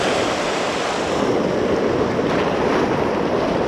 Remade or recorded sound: recorded